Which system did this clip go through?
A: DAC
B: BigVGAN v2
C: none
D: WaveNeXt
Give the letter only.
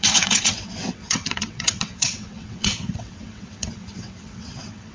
D